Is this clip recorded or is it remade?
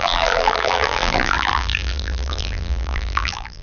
remade